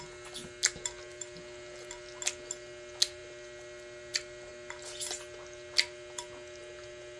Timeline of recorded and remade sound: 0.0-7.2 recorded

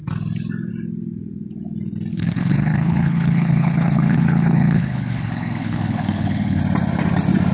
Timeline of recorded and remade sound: 0.0-2.1 recorded; 2.1-6.6 remade; 6.6-7.5 recorded

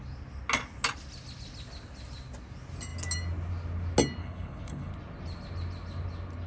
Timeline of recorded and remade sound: 0.0-4.2 recorded; 4.2-4.9 remade; 4.9-6.5 recorded